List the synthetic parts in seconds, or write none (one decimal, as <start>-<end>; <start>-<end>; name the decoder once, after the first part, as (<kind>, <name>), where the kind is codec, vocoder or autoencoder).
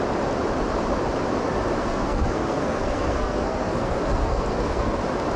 1.8-5.0 (codec, SNAC)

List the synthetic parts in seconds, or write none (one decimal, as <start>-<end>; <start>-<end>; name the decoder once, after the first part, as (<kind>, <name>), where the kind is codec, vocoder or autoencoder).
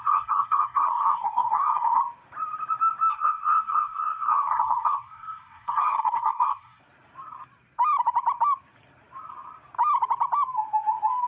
0.0-2.0 (codec, SNAC); 3.1-6.8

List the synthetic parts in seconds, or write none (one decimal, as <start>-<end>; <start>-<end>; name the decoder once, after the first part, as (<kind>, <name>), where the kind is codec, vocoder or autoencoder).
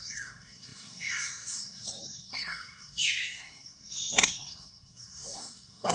0.0-5.9 (codec, SNAC)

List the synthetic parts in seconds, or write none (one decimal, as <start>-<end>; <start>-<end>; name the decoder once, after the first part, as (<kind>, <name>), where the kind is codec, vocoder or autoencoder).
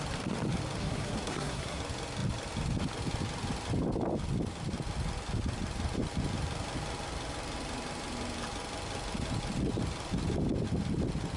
0.8-1.8 (codec, SNAC)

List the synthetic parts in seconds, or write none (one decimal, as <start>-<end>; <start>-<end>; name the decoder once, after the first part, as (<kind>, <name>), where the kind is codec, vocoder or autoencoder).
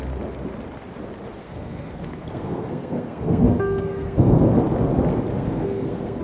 1.4-4.4 (codec, SNAC); 5.3-6.2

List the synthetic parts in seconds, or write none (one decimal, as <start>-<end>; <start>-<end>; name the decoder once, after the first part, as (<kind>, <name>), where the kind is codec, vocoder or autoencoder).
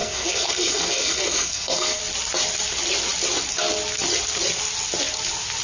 0.0-2.0 (codec, SNAC)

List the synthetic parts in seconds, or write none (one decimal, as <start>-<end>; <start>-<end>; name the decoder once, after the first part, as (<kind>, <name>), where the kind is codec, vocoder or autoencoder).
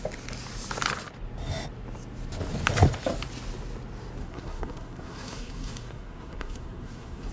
4.2-7.3 (codec, SNAC)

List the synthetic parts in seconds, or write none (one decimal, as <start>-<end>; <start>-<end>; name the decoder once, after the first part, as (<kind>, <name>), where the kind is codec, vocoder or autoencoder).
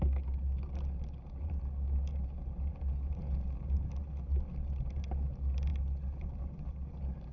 none